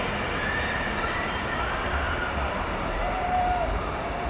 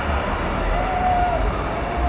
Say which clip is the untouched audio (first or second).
second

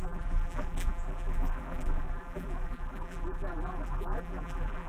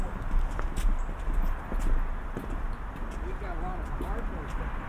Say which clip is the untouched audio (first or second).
second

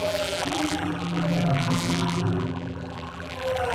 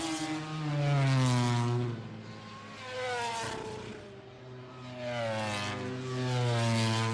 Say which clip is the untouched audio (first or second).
second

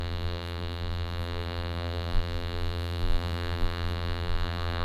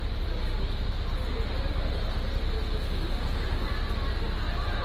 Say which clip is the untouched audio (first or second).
second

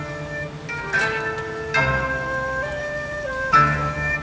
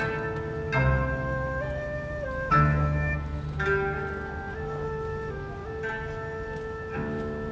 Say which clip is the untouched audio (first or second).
second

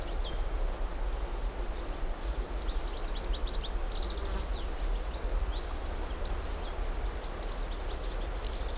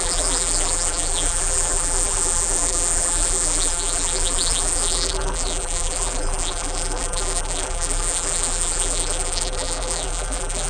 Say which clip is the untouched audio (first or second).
first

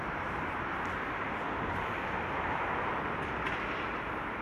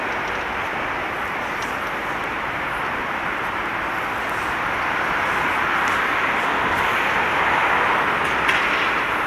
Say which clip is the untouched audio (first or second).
second